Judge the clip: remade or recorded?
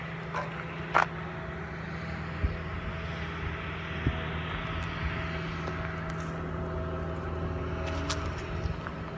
recorded